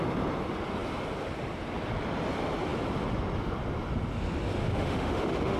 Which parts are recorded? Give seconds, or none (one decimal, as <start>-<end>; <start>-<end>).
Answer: 0.0-4.6